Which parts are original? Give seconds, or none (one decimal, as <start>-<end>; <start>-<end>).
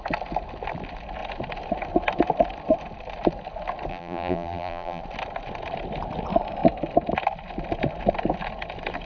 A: 0.0-3.9; 5.0-9.1